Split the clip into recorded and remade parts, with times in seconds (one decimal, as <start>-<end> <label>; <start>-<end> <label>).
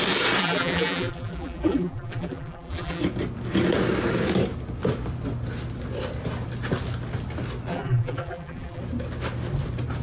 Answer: 0.0-0.4 recorded; 0.4-3.0 remade; 3.0-7.7 recorded; 7.7-8.8 remade; 8.8-10.0 recorded